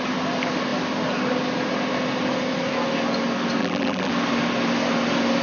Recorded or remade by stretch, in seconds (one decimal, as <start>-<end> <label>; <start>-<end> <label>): 0.0-3.6 recorded; 3.6-4.1 remade; 4.1-5.4 recorded